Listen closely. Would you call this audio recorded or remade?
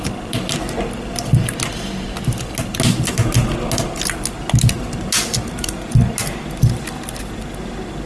recorded